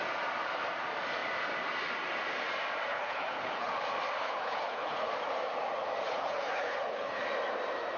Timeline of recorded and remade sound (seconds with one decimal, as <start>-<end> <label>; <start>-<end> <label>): 0.0-2.9 recorded; 2.9-3.7 remade; 3.7-4.2 recorded; 4.2-5.1 remade; 5.1-6.1 recorded; 6.1-7.2 remade; 7.2-8.0 recorded